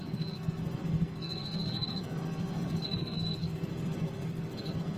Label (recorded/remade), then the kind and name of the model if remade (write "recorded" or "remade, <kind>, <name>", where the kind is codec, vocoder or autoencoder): remade, codec, SNAC